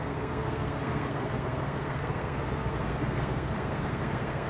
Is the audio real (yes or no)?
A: no